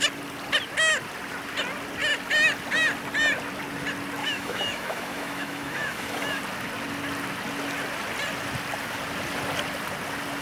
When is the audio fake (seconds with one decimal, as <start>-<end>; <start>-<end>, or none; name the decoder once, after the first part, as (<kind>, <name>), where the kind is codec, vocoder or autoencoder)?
4.2-6.4 (autoencoder, DAC-VAE)